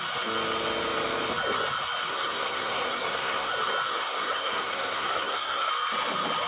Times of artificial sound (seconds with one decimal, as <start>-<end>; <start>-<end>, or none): 2.1-3.5; 3.9-5.7